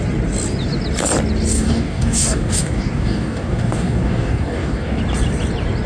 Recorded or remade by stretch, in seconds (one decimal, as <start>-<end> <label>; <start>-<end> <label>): 0.0-1.5 recorded; 1.5-5.0 remade; 5.0-5.9 recorded